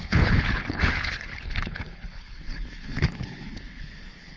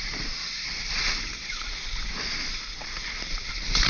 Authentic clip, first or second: second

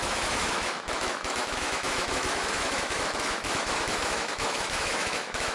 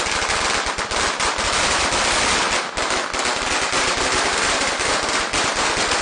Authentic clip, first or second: second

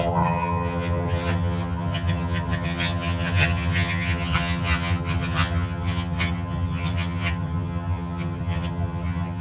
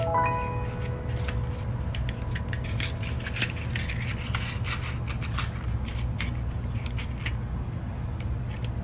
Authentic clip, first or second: second